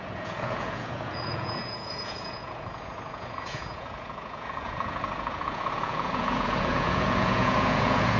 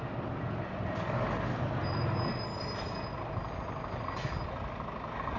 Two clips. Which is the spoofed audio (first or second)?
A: first